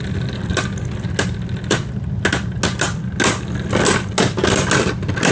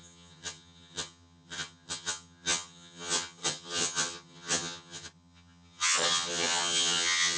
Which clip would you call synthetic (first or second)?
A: second